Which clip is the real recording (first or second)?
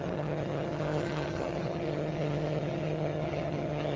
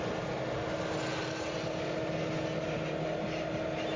second